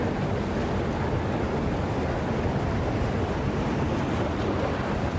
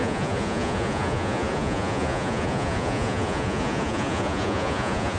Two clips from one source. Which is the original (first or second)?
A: first